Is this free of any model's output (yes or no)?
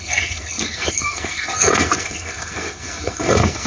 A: no